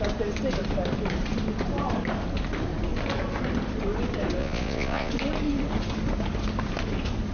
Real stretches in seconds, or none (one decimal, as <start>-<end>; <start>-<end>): 0.0-4.4; 5.1-7.3